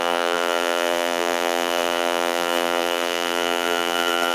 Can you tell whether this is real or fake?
fake